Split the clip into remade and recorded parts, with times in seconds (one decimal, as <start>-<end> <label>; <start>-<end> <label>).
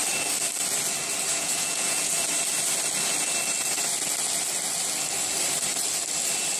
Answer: 0.0-1.3 recorded; 1.3-2.2 remade; 2.2-6.6 recorded